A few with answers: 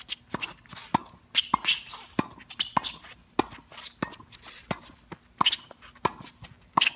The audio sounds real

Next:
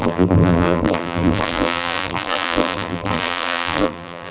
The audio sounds fake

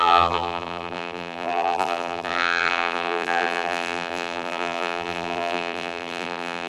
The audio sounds fake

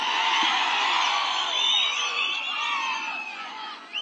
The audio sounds fake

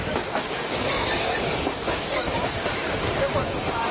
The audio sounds fake